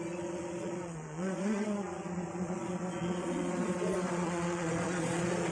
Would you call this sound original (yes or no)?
no